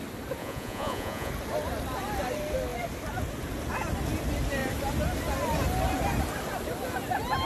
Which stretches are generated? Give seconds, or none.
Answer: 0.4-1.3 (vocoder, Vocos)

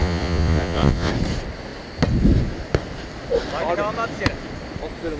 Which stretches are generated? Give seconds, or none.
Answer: 0.0-1.1 (vocoder, Vocos)